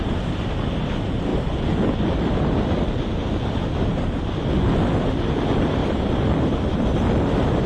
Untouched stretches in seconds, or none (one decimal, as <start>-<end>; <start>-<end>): 0.0-1.3; 3.0-5.8; 7.2-7.7